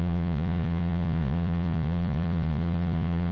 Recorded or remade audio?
remade